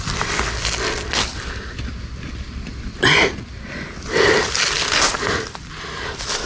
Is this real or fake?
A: real